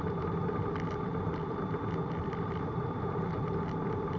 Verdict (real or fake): real